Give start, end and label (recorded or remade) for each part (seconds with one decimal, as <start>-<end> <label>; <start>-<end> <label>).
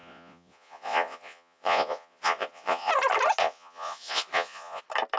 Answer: 0.0-2.9 remade; 2.9-3.4 recorded; 3.4-4.8 remade; 4.8-5.2 recorded